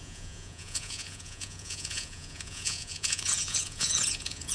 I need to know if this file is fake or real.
fake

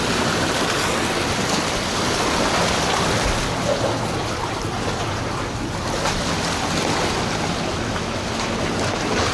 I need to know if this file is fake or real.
real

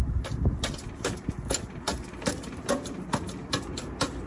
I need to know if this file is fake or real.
real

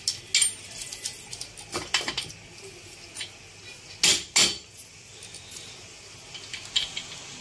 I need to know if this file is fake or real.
real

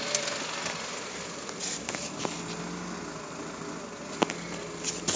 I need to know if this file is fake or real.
real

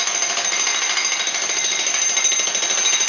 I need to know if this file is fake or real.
real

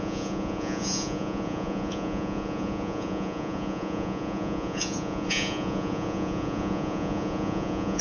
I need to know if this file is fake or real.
fake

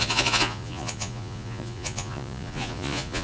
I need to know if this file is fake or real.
fake